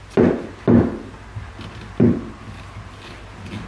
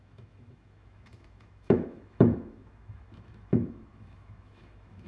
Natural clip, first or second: first